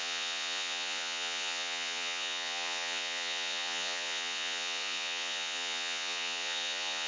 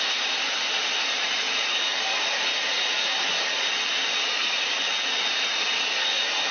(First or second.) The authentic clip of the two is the second